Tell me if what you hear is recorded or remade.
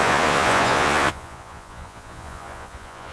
remade